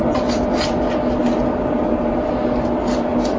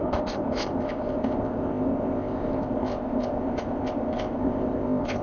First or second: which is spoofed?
second